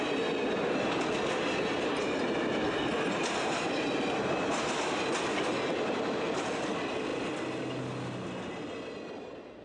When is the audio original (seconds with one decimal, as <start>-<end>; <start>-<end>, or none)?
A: 0.0-9.6